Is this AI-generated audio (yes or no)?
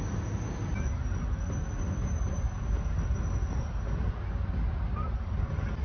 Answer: no